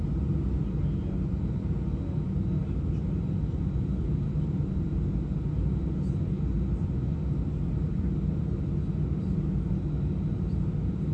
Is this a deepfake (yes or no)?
no